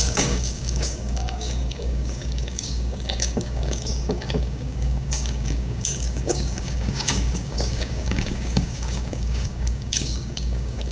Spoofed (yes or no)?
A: yes